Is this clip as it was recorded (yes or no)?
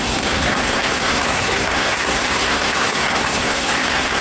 no